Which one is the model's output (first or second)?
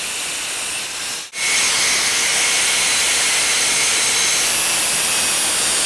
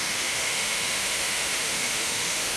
second